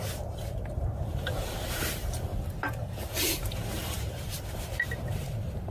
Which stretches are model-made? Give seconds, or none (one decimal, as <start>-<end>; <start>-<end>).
0.0-2.3; 3.1-5.7